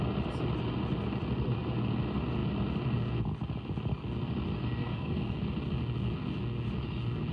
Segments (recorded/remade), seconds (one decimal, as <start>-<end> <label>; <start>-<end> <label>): 0.0-4.8 recorded; 4.8-5.4 remade; 5.4-7.3 recorded